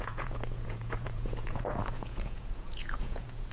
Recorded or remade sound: remade